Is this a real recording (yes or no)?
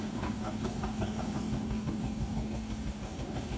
no